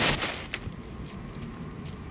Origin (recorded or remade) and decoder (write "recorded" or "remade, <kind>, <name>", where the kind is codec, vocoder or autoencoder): recorded